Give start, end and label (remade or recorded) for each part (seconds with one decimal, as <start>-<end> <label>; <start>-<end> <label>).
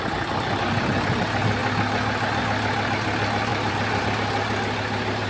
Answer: 0.0-3.5 recorded; 3.5-4.0 remade; 4.0-5.3 recorded